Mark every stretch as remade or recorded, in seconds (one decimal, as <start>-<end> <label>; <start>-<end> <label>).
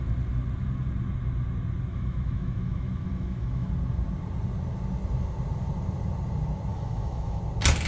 0.0-1.9 recorded; 1.9-3.7 remade; 3.7-6.7 recorded; 6.7-7.4 remade; 7.4-7.9 recorded